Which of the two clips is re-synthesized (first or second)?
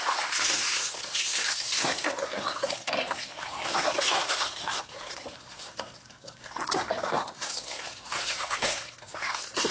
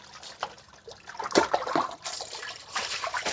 first